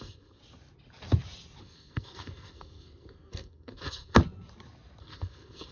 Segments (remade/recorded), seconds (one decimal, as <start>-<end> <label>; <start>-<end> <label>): 0.0-0.4 remade; 0.4-1.6 recorded; 1.6-4.2 remade; 4.2-5.0 recorded; 5.0-5.7 remade